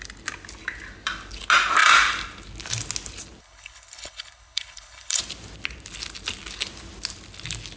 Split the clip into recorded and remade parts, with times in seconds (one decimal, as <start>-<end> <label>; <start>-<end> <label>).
0.0-3.4 recorded; 3.4-5.2 remade; 5.2-7.8 recorded